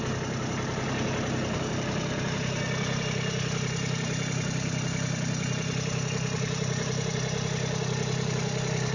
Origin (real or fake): real